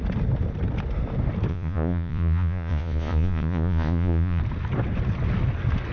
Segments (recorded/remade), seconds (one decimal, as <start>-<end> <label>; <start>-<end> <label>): 0.0-1.5 recorded; 1.5-4.4 remade; 4.4-5.9 recorded

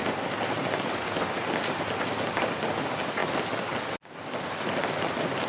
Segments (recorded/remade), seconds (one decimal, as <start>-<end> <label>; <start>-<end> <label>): 0.0-5.5 recorded

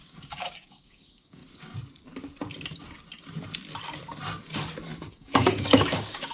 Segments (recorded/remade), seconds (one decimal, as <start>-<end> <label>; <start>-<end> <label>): 0.0-1.4 remade; 1.4-5.1 recorded; 5.1-6.3 remade

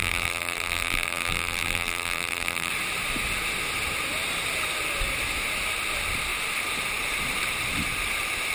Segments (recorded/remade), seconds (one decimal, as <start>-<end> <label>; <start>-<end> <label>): 0.0-2.7 remade; 2.7-8.5 recorded